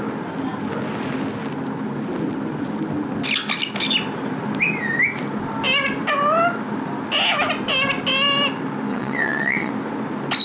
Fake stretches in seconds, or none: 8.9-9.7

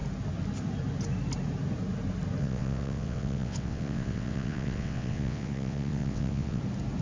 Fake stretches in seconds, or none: 2.4-6.6